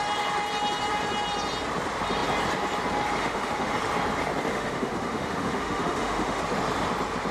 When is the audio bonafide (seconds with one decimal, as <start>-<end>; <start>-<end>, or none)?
0.0-3.2; 3.7-4.5; 6.4-7.3